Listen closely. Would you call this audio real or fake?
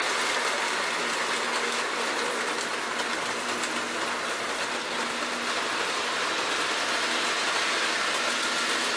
real